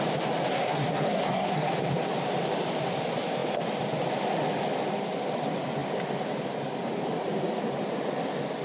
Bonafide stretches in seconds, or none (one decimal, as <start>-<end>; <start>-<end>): 0.0-0.5; 1.7-8.6

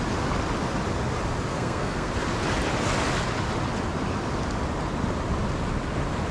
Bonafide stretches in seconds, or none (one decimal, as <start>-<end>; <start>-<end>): 0.0-1.5; 2.1-6.3

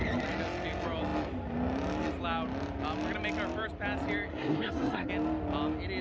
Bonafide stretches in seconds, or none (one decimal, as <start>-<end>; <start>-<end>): 0.0-4.3; 5.1-6.0

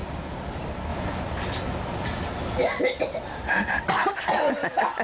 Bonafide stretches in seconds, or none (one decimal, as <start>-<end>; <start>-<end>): 0.0-5.0